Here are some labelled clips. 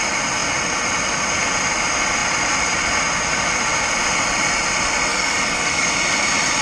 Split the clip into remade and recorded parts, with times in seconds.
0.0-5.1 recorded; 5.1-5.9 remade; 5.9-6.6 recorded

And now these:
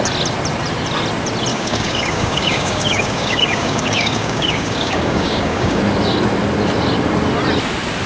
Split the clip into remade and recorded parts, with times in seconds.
0.0-1.5 recorded; 1.5-5.8 remade; 5.8-8.1 recorded